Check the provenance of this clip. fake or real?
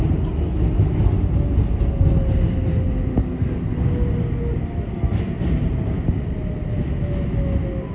real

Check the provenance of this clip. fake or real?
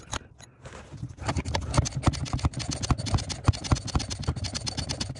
real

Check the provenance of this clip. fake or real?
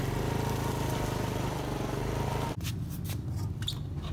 real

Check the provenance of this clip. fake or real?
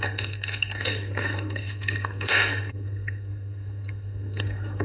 fake